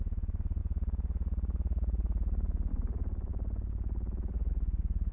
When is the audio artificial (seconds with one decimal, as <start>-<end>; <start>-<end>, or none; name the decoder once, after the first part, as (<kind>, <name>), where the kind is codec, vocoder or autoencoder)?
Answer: 0.0-0.6 (vocoder, BigVGAN v2); 2.7-5.1